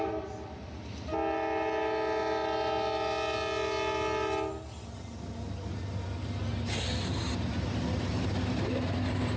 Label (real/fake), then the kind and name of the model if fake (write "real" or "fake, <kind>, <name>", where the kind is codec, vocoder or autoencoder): real